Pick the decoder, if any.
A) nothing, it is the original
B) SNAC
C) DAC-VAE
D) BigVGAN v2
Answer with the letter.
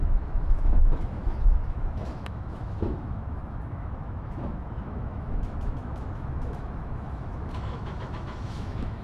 C